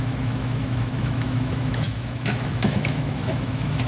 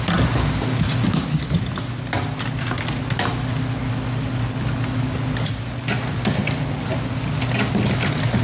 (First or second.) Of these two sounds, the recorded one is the second